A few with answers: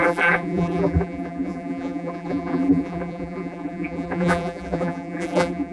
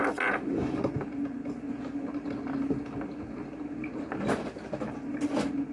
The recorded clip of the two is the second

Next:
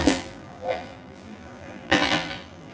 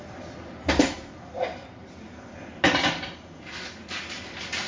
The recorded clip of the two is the second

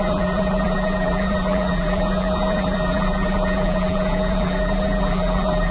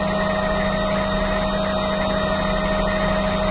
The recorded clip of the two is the second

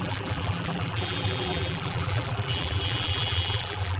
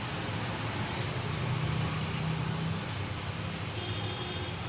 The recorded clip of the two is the second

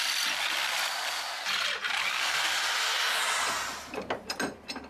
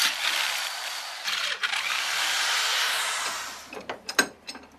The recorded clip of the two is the first